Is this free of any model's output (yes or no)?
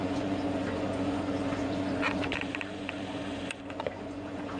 no